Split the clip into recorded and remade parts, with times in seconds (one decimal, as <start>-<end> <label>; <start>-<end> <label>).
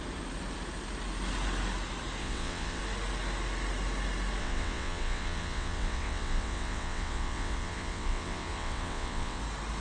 0.0-2.2 recorded; 2.2-2.8 remade; 2.8-4.4 recorded; 4.4-9.4 remade; 9.4-9.8 recorded